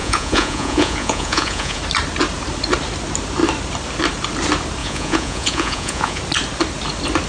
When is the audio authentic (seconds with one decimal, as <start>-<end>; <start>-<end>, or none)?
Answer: 1.8-4.8; 6.2-7.3